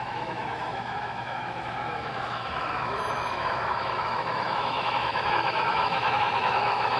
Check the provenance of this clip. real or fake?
fake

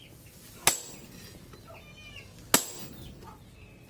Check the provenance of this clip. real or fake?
real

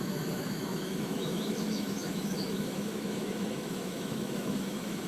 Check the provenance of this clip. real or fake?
fake